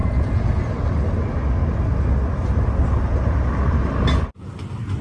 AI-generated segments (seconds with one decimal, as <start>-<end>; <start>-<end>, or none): 0.0-0.6